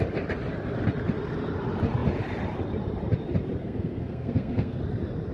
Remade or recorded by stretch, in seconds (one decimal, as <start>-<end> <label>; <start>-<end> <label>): 0.0-3.6 recorded; 3.6-4.8 remade; 4.8-5.3 recorded